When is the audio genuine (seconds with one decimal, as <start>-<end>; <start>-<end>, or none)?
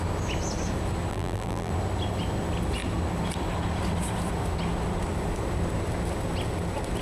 0.0-1.1; 1.7-7.0